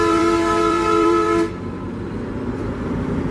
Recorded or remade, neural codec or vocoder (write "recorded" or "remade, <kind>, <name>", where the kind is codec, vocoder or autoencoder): remade, vocoder, BigVGAN v2